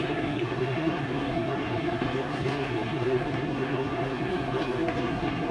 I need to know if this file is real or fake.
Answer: fake